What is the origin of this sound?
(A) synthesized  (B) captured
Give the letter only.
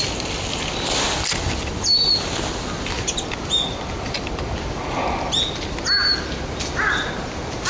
B